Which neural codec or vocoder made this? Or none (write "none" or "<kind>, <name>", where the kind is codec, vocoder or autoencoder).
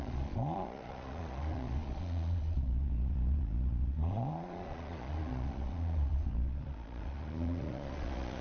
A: vocoder, Vocos